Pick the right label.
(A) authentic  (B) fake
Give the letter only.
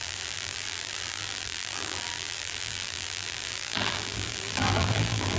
B